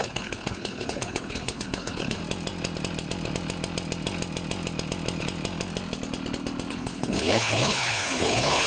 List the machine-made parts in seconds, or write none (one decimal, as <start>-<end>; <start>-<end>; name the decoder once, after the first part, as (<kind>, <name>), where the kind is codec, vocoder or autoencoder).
0.0-2.2 (codec, HILCodec); 6.7-8.7